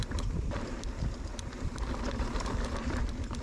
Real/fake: fake